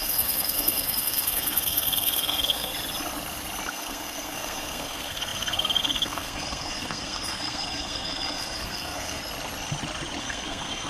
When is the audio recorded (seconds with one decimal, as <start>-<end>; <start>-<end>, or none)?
2.7-3.7; 9.2-10.2